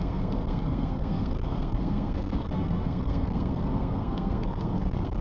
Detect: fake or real fake